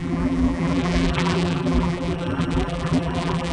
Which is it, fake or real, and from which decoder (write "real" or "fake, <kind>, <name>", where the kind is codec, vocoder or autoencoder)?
fake, vocoder, BigVGAN v2